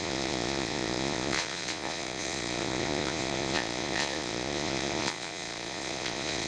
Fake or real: fake